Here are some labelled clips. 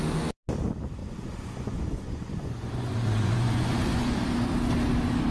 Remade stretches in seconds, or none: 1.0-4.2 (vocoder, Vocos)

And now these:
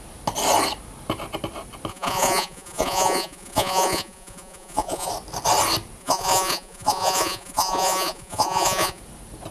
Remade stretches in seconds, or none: 1.9-5.1 (vocoder, Vocos); 6.0-9.0

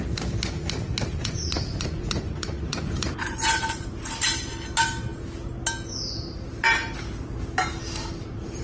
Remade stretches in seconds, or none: 1.1-4.1 (vocoder, Vocos)

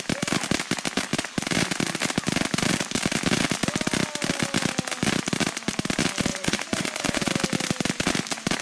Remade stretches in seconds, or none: 6.3-7.3 (vocoder, Vocos)

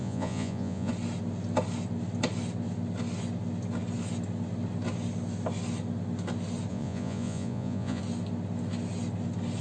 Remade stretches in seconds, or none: 0.0-0.9 (vocoder, Vocos); 6.7-8.0

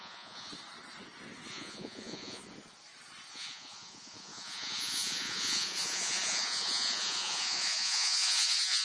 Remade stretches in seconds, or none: 0.0-0.5 (vocoder, Vocos); 1.5-2.4; 3.3-8.8

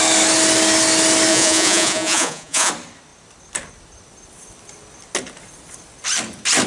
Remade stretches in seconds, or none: 1.3-2.7 (vocoder, Vocos)

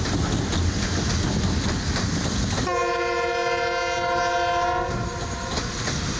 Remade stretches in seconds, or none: none